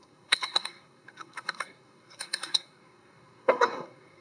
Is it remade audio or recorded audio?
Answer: remade